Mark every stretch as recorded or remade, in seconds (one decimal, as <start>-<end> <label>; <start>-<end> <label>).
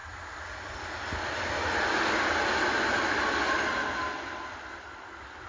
0.0-5.5 recorded